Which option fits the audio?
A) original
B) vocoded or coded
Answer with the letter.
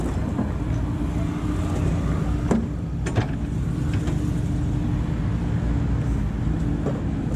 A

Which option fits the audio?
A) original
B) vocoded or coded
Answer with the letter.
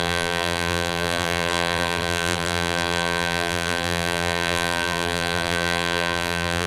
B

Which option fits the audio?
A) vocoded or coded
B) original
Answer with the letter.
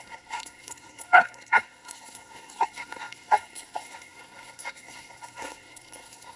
A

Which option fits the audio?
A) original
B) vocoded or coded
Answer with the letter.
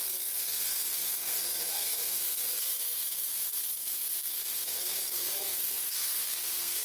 B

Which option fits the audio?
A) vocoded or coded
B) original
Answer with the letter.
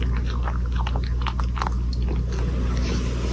B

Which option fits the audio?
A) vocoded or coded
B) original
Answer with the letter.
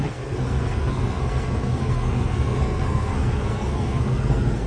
A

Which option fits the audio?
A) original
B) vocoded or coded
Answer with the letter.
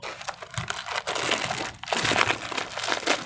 A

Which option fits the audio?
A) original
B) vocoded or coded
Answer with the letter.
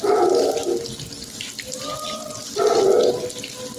A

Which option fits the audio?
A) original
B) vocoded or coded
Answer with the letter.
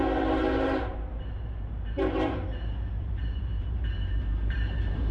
B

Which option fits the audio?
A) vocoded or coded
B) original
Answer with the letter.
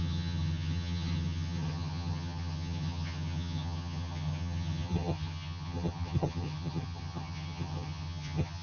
A